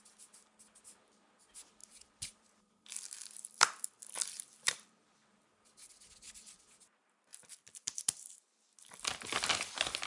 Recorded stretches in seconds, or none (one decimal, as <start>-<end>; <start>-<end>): 0.0-1.8; 6.6-7.3; 9.7-10.1